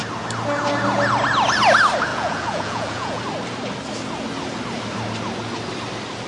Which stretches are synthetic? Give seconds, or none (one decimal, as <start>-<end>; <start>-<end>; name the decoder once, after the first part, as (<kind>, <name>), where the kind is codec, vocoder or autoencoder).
2.1-3.2 (vocoder, Vocos)